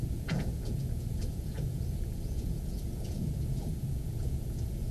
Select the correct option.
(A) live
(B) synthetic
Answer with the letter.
B